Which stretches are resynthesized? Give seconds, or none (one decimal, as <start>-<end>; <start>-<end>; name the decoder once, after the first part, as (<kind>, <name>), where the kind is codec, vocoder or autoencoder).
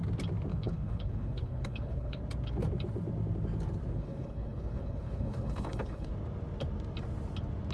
0.5-2.2 (codec, HILCodec); 3.9-6.1